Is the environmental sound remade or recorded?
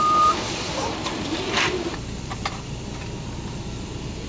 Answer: remade